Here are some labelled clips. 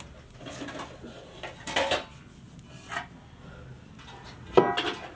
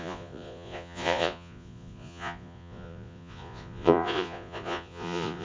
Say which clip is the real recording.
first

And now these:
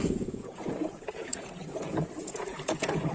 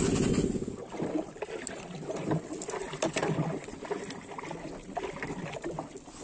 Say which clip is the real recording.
second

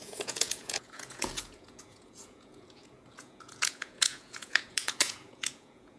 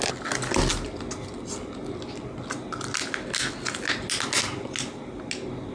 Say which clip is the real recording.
second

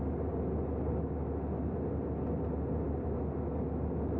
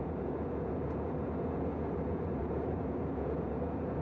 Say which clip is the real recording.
first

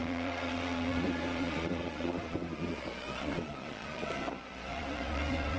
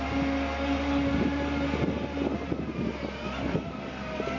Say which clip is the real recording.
second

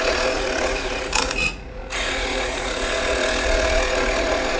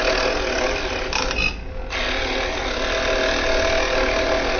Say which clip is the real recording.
second